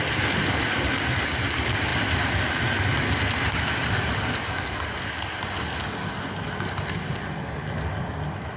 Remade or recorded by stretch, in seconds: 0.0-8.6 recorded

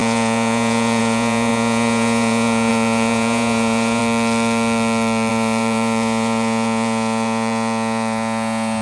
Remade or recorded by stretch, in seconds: 0.0-4.0 remade; 4.0-5.3 recorded; 5.3-8.8 remade

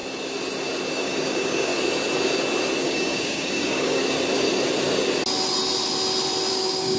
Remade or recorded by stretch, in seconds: 0.0-0.9 recorded; 0.9-1.7 remade; 1.7-2.8 recorded; 2.8-4.0 remade; 4.0-6.5 recorded; 6.5-7.0 remade

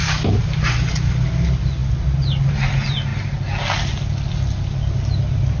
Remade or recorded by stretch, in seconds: 0.0-5.6 recorded

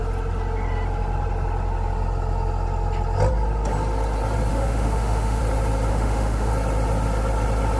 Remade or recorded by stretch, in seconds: 0.0-4.5 recorded; 4.5-5.4 remade; 5.4-5.9 recorded; 5.9-6.5 remade; 6.5-7.8 recorded

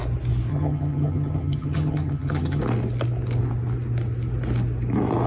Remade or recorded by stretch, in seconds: 0.0-0.5 recorded; 0.5-2.6 remade; 2.6-5.3 recorded

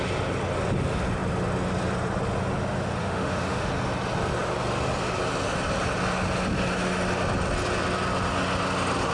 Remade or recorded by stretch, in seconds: 0.0-3.0 recorded; 3.0-3.7 remade; 3.7-9.1 recorded

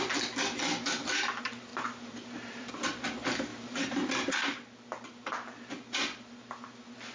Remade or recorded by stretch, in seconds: 0.0-1.7 recorded; 1.7-2.7 remade; 2.7-3.5 recorded; 3.5-4.1 remade; 4.1-7.1 recorded